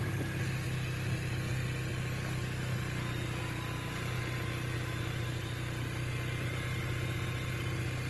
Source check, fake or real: real